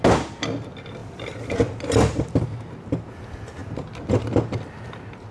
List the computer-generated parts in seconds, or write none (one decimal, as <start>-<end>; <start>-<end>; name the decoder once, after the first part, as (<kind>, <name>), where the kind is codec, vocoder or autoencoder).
1.0-1.8 (vocoder, BigVGAN v2)